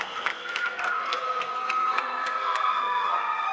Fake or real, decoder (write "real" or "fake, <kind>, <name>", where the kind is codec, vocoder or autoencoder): fake, codec, SNAC